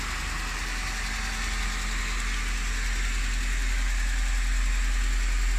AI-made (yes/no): no